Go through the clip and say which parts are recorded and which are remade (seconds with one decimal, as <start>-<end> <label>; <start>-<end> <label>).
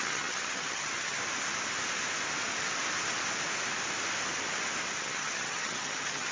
0.0-1.2 remade; 1.2-5.0 recorded; 5.0-6.3 remade